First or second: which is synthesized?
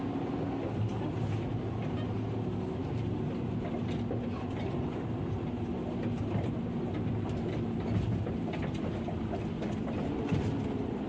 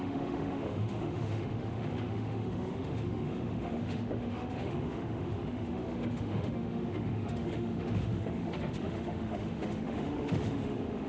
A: second